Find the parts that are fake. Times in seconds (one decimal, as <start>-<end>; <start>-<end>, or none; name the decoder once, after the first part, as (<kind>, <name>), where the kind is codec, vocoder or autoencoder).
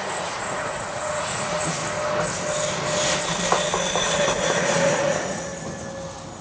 0.0-1.8 (vocoder, Vocos); 4.0-5.5